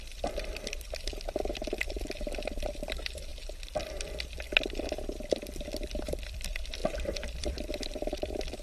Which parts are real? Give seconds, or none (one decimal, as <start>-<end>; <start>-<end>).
1.1-1.8; 3.3-4.8